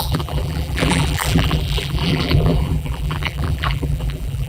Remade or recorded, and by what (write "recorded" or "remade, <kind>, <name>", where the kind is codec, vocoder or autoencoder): remade, vocoder, BigVGAN v2